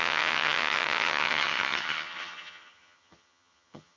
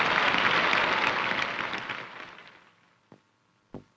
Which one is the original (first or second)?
second